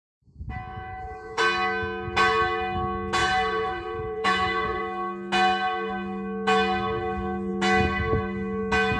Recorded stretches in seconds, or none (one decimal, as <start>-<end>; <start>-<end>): 0.0-0.7; 1.4-3.2; 4.8-9.0